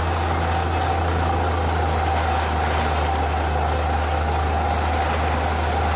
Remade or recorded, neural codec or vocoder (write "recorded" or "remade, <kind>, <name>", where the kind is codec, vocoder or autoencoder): recorded